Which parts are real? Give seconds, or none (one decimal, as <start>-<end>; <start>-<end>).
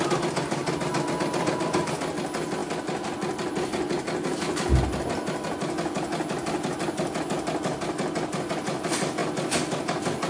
0.0-10.3